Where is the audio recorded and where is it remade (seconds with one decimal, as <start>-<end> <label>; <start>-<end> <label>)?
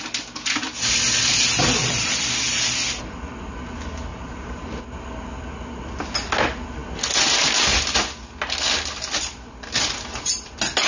0.0-4.1 recorded; 4.1-4.8 remade; 4.8-10.9 recorded